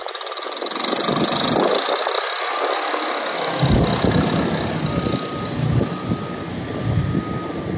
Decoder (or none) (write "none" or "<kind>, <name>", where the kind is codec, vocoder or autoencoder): none